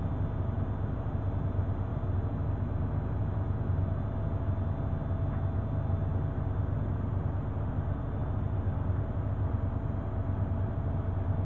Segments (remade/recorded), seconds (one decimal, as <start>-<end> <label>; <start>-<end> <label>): 0.0-11.4 recorded